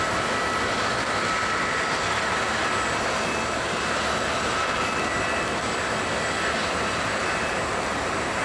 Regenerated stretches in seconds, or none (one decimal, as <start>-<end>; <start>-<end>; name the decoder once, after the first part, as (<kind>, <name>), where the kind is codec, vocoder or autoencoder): 6.6-8.4 (vocoder, BigVGAN v2)